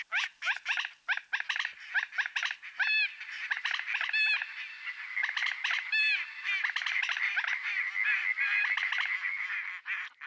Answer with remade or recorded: recorded